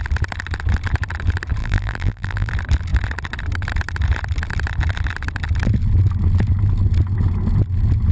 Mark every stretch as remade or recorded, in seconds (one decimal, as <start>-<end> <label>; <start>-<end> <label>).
0.0-1.6 recorded; 1.6-2.5 remade; 2.5-8.1 recorded

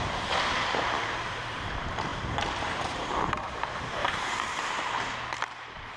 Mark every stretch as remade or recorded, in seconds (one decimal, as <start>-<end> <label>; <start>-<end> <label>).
0.0-6.0 remade

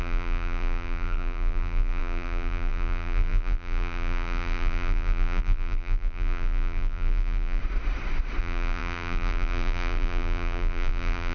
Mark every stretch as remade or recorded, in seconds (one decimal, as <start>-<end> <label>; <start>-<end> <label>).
0.0-7.6 remade; 7.6-8.4 recorded; 8.4-11.3 remade

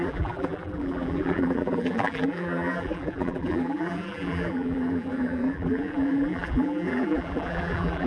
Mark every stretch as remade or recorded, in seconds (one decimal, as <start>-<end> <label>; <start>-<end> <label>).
0.0-8.1 remade

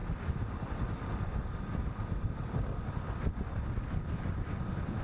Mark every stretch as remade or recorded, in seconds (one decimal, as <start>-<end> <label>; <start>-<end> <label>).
0.0-5.0 recorded

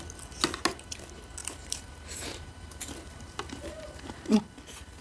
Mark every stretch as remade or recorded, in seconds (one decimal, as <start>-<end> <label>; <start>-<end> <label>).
0.0-1.4 recorded; 1.4-4.4 remade; 4.4-5.0 recorded

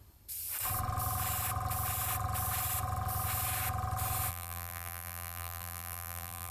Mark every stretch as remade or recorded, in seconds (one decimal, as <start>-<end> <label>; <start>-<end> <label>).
0.0-4.3 recorded; 4.3-6.5 remade

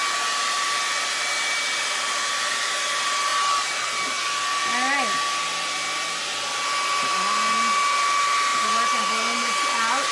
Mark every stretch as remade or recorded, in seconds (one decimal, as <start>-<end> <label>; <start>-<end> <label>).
0.0-10.1 recorded